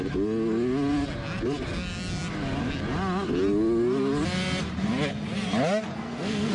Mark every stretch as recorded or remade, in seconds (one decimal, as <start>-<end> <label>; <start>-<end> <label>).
0.0-5.9 recorded; 5.9-6.5 remade